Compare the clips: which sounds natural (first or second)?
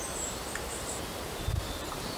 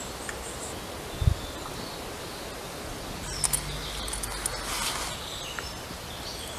second